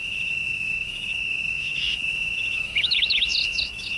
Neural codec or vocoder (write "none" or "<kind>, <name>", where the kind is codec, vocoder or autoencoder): autoencoder, DAC-VAE